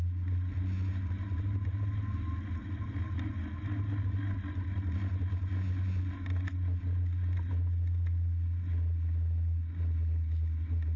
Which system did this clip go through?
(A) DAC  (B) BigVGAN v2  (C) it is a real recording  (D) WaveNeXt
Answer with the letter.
C